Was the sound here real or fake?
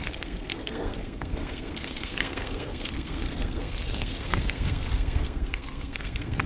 fake